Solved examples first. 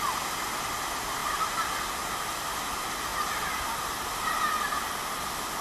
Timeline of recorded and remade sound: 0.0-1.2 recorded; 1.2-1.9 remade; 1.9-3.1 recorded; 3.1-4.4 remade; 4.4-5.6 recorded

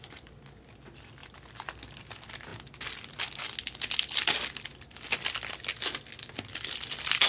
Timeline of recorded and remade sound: 0.0-7.3 recorded

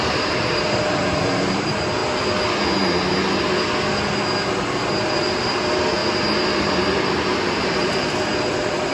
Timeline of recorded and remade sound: 0.0-2.0 remade; 2.0-4.9 recorded; 4.9-6.0 remade; 6.0-6.6 recorded; 6.6-8.9 remade